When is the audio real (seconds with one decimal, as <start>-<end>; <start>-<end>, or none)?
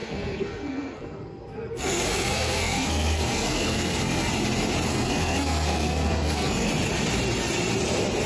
4.3-4.9; 6.7-8.3